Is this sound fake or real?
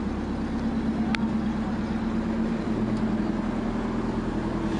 real